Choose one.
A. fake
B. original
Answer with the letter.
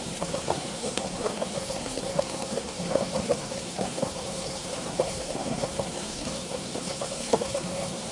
A